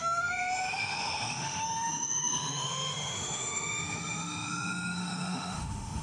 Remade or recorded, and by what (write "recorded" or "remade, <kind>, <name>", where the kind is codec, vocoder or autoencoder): remade, autoencoder, DAC-VAE